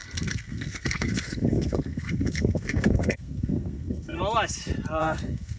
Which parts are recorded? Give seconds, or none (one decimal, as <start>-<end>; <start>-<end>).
4.2-5.0